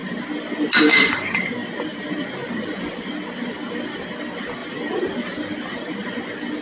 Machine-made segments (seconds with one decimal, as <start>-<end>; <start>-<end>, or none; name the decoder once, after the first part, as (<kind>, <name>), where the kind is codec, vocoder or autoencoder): 0.0-1.6 (vocoder, BigVGAN v2); 2.2-4.6; 5.7-6.6